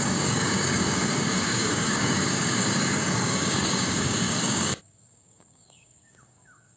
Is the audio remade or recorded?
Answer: remade